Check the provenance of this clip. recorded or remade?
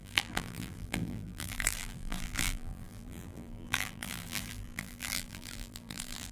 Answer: remade